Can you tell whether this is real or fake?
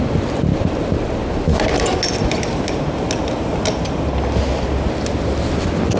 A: real